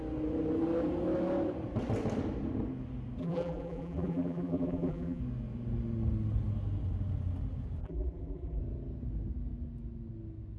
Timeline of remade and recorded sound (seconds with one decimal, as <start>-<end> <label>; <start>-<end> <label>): 0.0-3.2 recorded; 3.2-5.2 remade; 5.2-7.8 recorded; 7.8-8.6 remade; 8.6-10.6 recorded